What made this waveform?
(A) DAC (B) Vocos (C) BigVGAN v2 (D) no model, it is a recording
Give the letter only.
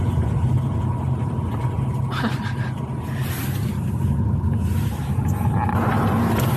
D